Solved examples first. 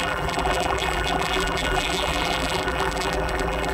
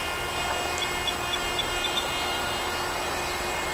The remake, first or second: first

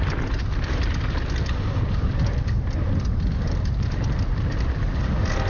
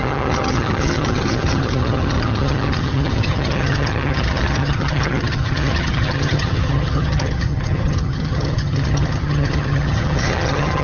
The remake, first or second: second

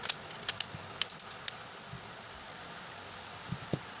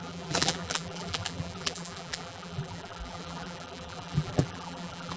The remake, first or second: second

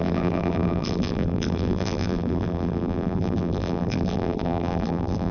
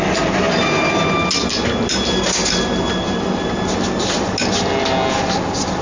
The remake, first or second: first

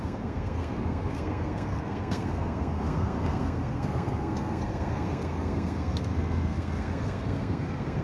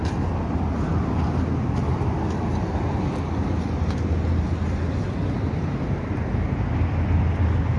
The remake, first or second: first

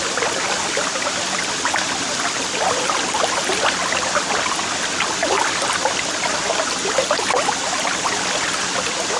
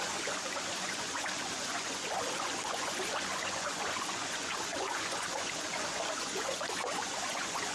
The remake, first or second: second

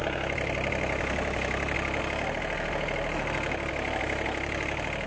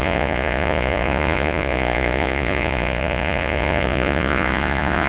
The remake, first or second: second